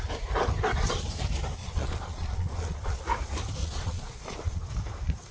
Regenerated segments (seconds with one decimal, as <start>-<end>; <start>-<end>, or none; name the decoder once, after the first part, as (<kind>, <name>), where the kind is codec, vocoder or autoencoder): 1.6-3.0 (vocoder, Vocos); 3.6-4.6